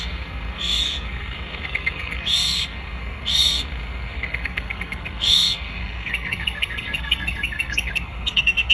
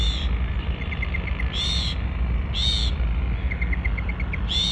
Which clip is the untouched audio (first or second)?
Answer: second